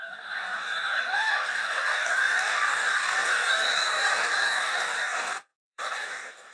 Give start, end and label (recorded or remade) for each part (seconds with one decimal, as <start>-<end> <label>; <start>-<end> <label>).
0.0-6.5 remade